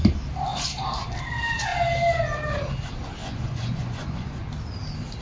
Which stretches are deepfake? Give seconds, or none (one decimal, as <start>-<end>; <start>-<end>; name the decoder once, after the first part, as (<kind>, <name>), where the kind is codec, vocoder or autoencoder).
3.2-4.4 (vocoder, Vocos)